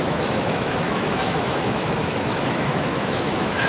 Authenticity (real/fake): fake